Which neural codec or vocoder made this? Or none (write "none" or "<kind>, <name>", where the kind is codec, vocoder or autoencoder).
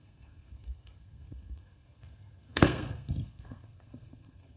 codec, SNAC